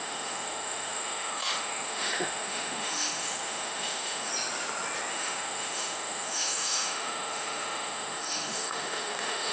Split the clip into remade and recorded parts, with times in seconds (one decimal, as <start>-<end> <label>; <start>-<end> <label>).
0.0-4.3 remade; 4.3-5.1 recorded; 5.1-9.5 remade